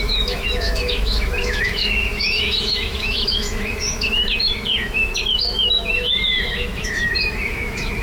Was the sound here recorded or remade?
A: remade